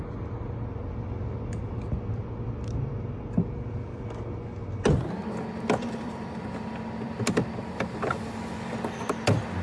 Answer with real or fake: real